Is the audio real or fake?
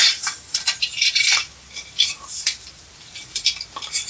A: fake